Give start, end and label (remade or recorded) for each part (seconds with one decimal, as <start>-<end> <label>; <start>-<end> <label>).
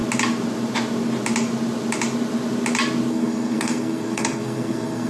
0.0-3.1 recorded; 3.1-5.1 remade